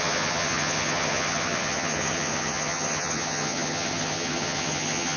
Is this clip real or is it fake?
fake